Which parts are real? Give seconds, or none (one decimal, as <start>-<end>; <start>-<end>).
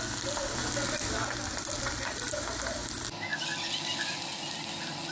0.0-5.1